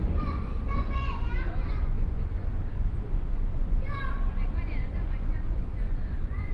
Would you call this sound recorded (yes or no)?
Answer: no